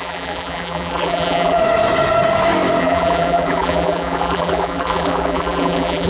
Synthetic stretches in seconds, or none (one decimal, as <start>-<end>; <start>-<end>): 0.0-1.6; 2.8-6.1